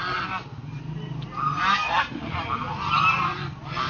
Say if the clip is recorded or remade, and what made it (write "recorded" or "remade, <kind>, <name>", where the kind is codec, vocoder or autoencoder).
recorded